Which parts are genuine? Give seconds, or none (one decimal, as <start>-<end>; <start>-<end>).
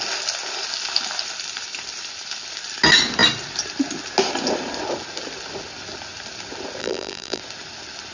0.0-6.8; 7.4-8.1